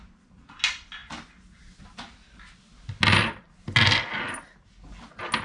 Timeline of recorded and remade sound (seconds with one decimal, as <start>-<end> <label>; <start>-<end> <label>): 0.0-5.4 recorded